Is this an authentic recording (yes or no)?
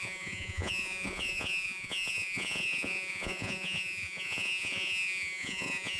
no